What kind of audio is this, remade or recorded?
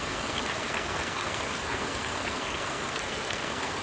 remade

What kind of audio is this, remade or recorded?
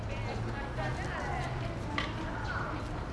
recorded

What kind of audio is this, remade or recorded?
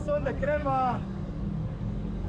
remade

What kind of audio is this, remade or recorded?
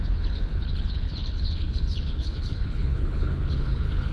remade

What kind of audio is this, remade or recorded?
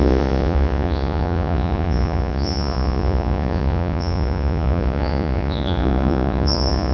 remade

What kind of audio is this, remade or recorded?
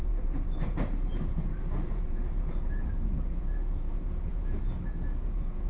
remade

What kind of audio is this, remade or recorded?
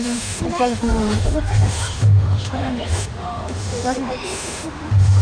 remade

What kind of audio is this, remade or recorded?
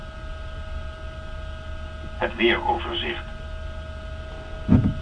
recorded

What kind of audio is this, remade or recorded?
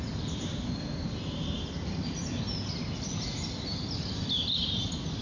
recorded